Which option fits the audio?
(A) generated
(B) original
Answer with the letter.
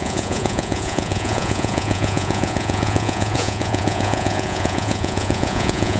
A